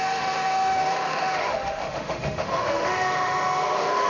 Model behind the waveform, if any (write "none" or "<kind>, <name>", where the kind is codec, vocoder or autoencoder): autoencoder, DAC-VAE